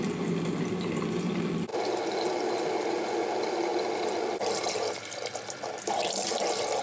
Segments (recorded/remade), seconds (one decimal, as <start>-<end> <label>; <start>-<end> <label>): 0.0-6.8 recorded